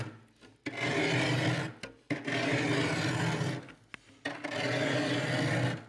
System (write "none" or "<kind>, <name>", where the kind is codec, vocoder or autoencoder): none